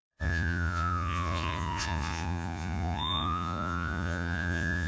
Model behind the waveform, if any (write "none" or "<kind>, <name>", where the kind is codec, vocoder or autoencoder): vocoder, Vocos